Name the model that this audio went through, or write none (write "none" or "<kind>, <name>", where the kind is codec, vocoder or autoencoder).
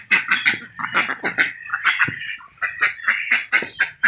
none